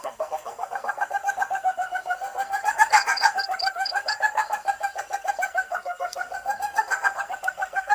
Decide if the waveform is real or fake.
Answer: fake